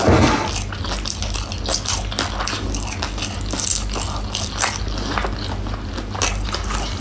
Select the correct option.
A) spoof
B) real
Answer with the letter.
B